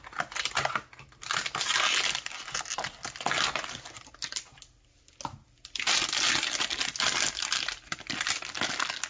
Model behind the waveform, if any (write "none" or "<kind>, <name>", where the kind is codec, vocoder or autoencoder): none